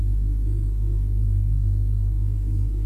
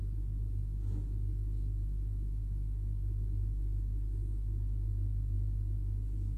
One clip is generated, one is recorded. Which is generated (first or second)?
first